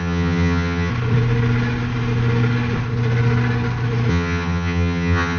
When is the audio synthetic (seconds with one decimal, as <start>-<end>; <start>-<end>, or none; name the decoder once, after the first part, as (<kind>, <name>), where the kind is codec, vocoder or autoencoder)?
0.0-0.9 (vocoder, HiFi-GAN); 4.1-5.4

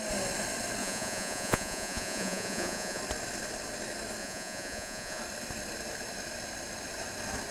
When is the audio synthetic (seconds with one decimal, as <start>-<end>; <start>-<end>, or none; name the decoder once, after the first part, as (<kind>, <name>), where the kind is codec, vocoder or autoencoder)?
0.8-3.0 (vocoder, Vocos); 4.2-5.2